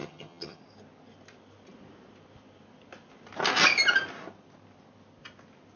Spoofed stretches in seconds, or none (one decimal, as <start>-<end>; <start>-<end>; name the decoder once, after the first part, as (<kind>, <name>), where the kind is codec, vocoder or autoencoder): 0.0-0.6 (vocoder, HiFi-GAN)